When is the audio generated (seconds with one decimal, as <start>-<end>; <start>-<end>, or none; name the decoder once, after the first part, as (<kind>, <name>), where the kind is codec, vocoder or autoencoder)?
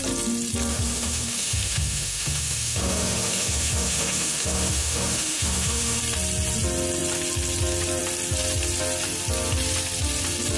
0.7-6.0 (autoencoder, DAC-VAE)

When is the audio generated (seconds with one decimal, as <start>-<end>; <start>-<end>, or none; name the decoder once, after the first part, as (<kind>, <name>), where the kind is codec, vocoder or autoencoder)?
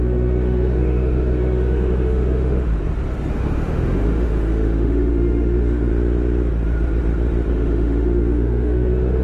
0.0-2.7 (autoencoder, DAC-VAE); 3.3-5.9; 7.5-9.2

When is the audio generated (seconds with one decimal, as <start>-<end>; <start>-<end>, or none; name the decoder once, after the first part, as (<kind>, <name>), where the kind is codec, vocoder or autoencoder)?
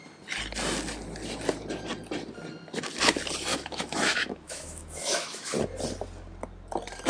3.5-5.5 (autoencoder, DAC-VAE)